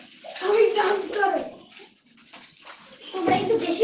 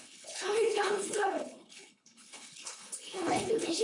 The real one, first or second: first